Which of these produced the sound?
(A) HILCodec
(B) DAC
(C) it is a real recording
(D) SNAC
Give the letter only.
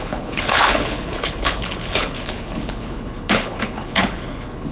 A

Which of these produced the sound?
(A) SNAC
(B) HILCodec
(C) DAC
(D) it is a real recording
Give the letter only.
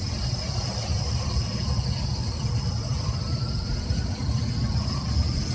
D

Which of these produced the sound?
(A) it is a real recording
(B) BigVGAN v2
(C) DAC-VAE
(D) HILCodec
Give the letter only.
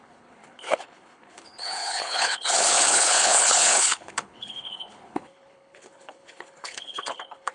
D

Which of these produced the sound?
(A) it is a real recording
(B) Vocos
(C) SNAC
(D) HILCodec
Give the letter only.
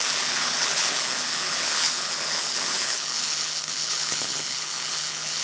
D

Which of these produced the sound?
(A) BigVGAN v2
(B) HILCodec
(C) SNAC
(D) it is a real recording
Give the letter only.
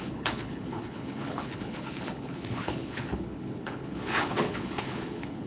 B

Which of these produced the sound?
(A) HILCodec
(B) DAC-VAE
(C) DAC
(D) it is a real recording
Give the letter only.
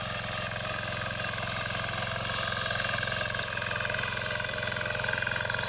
D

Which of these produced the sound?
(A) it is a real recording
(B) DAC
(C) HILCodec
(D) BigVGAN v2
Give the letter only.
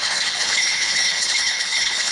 C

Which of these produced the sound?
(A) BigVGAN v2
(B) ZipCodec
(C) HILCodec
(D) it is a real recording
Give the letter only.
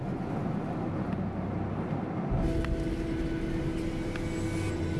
D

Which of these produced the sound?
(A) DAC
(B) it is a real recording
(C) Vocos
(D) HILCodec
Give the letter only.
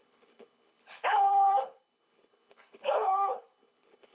D